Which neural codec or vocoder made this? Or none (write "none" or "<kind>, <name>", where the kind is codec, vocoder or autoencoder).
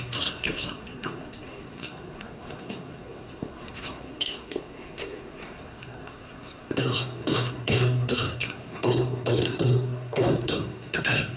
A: codec, SNAC